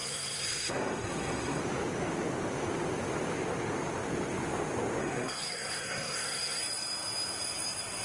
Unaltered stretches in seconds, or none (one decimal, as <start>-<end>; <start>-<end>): 1.6-5.0; 6.6-8.0